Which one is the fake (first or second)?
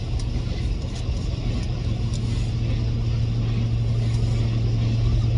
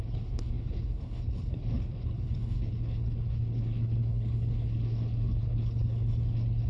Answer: second